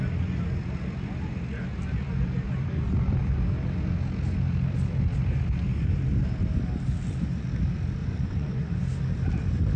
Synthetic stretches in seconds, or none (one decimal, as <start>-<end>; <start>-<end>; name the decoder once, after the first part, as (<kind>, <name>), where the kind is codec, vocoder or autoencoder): 8.0-8.8 (vocoder, Vocos)